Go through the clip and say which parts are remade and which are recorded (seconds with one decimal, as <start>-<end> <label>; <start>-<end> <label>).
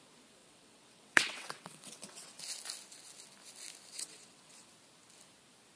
0.0-0.4 recorded; 0.4-2.4 remade; 2.4-3.9 recorded; 3.9-4.7 remade; 4.7-5.8 recorded